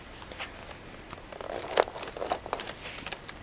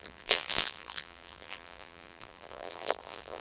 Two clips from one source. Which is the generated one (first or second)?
second